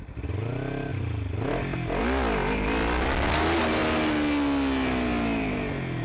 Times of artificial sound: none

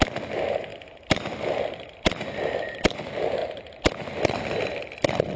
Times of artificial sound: none